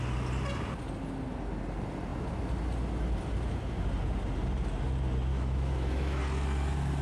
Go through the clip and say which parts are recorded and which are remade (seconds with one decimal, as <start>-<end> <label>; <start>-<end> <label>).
0.0-5.3 recorded; 5.3-6.2 remade; 6.2-7.0 recorded